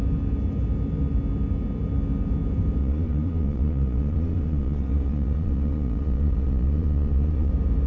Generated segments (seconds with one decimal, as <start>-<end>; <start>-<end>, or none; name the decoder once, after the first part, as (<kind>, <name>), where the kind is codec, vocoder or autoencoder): 2.8-7.5 (vocoder, Vocos)